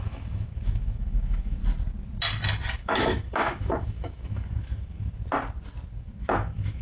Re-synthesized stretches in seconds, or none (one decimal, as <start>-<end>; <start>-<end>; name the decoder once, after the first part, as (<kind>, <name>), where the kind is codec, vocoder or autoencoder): 0.0-1.6 (autoencoder, DAC-VAE); 2.7-5.2; 6.0-6.8

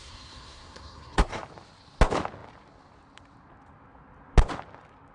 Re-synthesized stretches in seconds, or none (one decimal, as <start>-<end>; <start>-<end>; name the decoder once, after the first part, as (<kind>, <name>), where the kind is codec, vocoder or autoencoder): 0.0-1.4 (codec, SNAC)

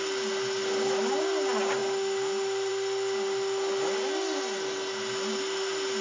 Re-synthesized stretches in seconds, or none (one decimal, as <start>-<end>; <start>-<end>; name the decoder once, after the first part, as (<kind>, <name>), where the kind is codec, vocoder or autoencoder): none

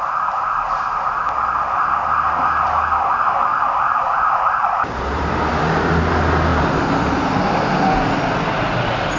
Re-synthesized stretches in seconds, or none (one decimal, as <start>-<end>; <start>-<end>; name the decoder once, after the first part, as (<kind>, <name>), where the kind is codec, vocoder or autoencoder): 3.5-5.5 (vocoder, BigVGAN v2)

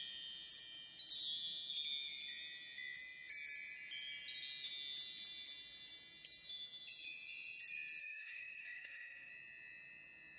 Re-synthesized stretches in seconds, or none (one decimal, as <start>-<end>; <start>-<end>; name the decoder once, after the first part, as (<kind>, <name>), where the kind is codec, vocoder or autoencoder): 8.0-9.3 (autoencoder, DAC-VAE)